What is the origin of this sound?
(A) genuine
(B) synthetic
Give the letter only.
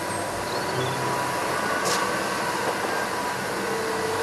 A